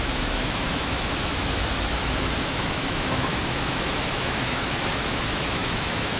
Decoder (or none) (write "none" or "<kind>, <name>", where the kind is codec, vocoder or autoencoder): autoencoder, DAC-VAE